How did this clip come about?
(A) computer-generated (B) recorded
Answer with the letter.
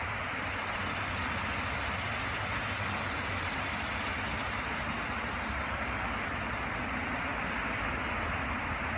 B